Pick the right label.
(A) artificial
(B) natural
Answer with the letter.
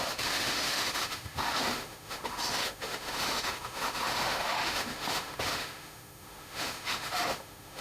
A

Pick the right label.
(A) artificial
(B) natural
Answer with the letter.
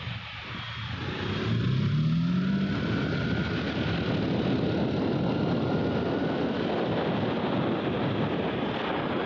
B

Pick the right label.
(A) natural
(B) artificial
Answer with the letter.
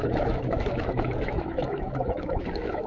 B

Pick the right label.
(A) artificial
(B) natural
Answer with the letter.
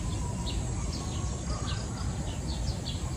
B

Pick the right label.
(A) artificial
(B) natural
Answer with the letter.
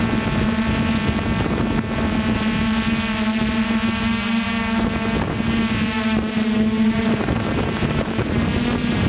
B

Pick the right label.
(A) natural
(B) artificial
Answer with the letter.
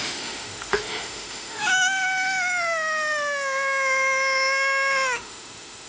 B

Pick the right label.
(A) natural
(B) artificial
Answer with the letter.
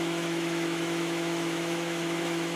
B